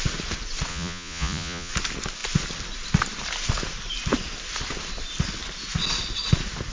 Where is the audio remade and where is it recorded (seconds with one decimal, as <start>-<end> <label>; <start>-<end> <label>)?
0.0-0.7 recorded; 0.7-1.7 remade; 1.7-6.7 recorded